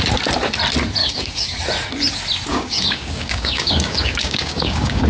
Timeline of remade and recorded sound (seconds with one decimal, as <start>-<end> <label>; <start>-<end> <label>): 0.0-1.0 recorded; 1.0-1.6 remade; 1.6-2.5 recorded; 2.5-5.1 remade